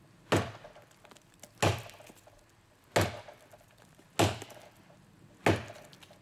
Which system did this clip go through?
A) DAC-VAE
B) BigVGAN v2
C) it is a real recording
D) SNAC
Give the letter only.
C